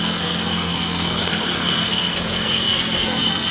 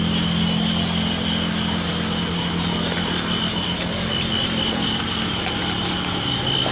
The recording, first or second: second